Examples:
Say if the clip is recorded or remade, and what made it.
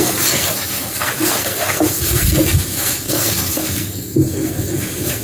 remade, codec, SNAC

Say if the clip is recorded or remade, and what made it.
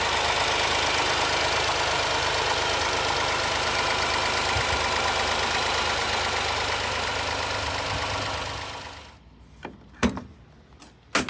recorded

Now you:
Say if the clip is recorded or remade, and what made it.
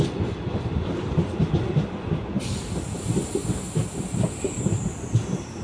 recorded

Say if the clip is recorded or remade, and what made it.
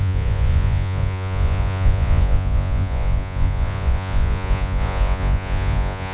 remade, vocoder, Vocos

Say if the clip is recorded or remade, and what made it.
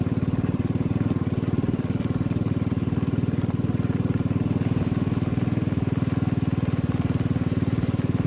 recorded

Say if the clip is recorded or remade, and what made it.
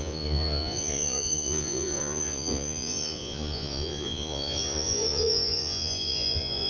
remade, vocoder, Vocos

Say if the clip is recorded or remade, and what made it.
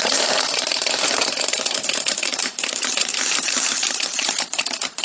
remade, vocoder, BigVGAN v2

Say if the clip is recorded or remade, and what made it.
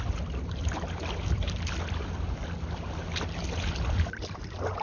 recorded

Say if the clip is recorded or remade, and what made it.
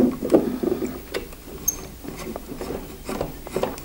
recorded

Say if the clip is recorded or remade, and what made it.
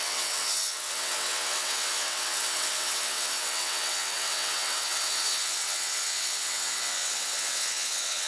remade, vocoder, WaveNeXt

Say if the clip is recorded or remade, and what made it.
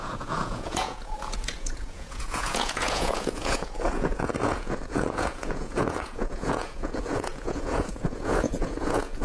remade, vocoder, Vocos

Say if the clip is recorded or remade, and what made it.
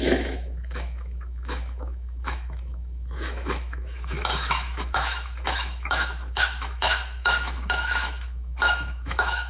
remade, autoencoder, DAC-VAE